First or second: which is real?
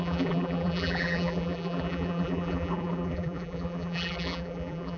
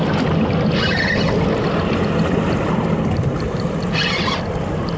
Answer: second